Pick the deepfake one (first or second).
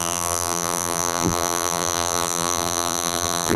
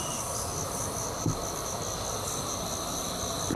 first